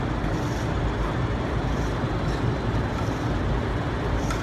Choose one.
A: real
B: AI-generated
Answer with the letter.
B